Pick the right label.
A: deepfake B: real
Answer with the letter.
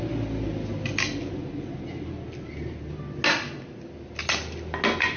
B